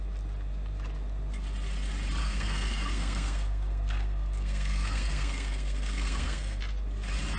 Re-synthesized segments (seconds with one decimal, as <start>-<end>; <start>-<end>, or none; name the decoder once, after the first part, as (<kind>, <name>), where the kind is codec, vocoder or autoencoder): 2.2-6.6 (codec, SNAC)